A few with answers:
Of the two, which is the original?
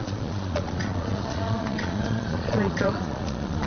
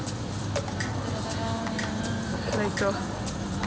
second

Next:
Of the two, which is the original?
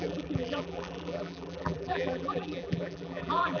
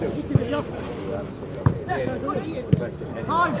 second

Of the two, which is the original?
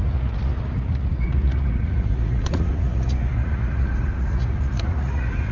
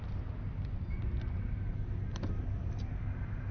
second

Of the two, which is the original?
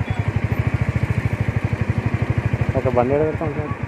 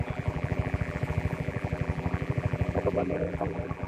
first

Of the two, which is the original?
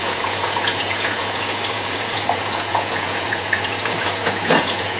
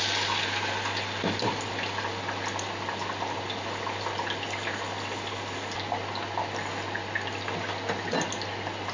second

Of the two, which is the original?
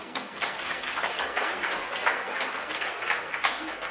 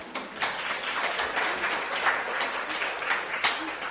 second